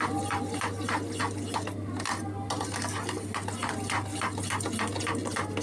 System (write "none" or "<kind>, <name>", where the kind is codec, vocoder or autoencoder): none